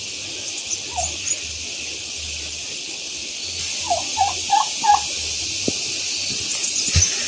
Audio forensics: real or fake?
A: real